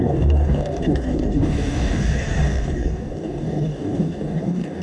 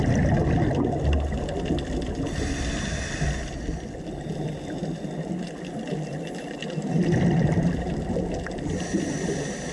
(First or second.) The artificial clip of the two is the first